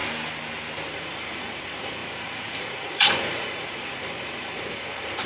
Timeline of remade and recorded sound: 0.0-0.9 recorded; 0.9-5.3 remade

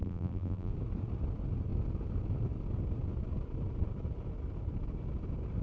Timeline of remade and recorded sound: 0.0-0.7 remade; 0.7-5.6 recorded

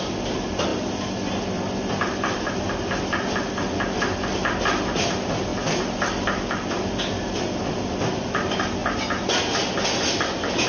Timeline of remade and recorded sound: 0.0-10.7 recorded

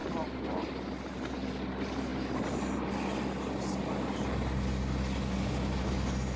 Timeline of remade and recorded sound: 0.0-0.6 remade; 0.6-6.4 recorded

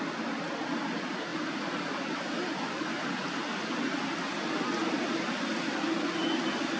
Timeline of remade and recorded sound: 0.0-6.8 recorded

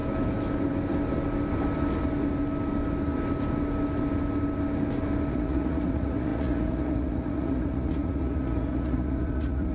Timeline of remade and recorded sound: 0.0-5.3 recorded; 5.3-9.7 remade

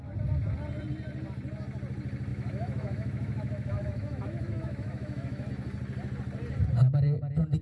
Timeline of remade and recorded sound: 0.0-2.3 recorded; 2.3-5.5 remade; 5.5-7.6 recorded

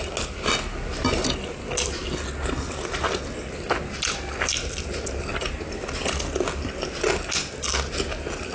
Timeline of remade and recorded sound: 0.0-8.5 recorded